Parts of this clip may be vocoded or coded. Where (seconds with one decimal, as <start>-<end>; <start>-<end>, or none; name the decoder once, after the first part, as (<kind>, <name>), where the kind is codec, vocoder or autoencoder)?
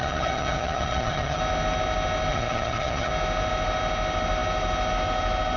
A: 0.0-1.4 (vocoder, HiFi-GAN); 2.3-3.1